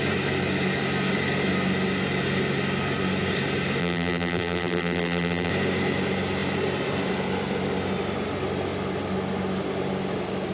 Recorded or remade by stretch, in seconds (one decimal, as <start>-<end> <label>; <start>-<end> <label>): 0.0-3.8 recorded; 3.8-5.5 remade; 5.5-10.5 recorded